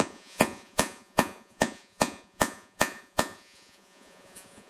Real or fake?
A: fake